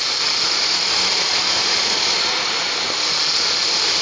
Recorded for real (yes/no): yes